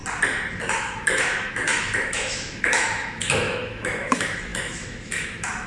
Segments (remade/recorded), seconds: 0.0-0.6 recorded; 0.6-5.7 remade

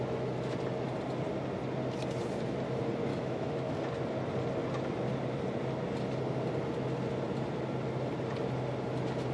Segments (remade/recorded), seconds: 0.0-3.1 recorded; 3.1-3.7 remade; 3.7-9.3 recorded

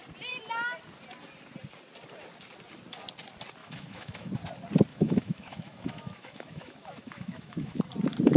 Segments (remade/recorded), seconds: 0.0-3.6 recorded; 3.6-4.3 remade; 4.3-4.9 recorded; 4.9-7.8 remade; 7.8-8.4 recorded